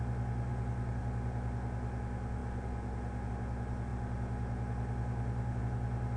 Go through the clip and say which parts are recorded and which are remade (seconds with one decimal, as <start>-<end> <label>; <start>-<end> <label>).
0.0-6.2 recorded